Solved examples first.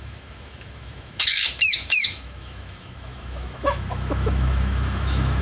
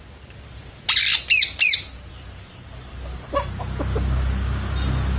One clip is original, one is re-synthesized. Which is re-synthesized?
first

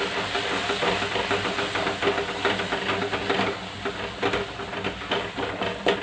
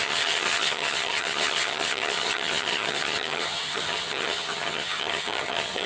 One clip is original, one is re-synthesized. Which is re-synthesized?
second